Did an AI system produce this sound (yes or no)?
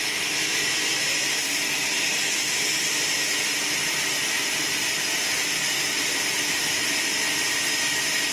no